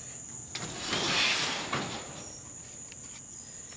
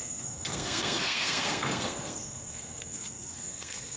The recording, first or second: first